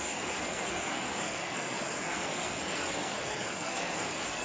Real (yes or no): no